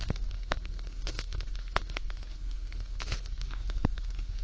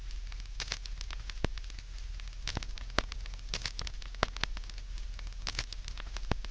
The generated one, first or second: first